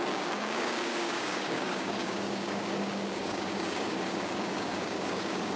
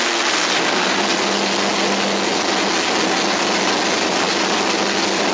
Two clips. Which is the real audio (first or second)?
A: second